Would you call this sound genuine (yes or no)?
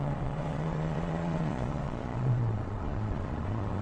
no